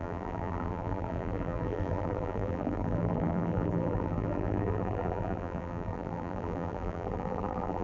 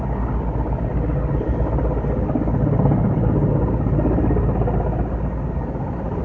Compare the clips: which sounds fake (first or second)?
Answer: first